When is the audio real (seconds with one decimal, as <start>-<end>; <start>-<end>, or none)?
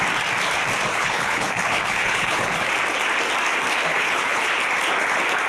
0.0-0.9; 2.7-3.9; 4.5-5.5